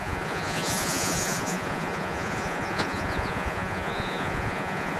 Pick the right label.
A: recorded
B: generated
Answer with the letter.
B